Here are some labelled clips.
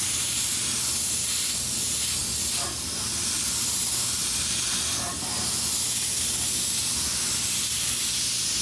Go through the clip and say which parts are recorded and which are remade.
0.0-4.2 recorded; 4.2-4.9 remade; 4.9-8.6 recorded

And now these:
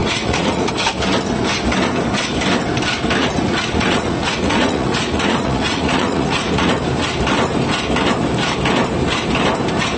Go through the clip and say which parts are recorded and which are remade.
0.0-0.7 remade; 0.7-3.2 recorded; 3.2-6.7 remade; 6.7-10.0 recorded

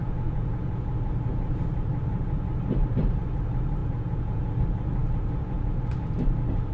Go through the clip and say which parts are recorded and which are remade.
0.0-0.9 remade; 0.9-3.8 recorded; 3.8-4.5 remade; 4.5-6.7 recorded

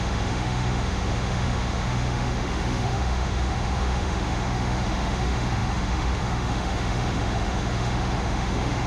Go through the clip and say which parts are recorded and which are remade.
0.0-8.9 remade